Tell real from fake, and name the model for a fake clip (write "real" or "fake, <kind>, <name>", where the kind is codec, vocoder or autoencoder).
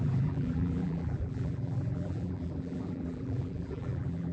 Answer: fake, vocoder, BigVGAN v2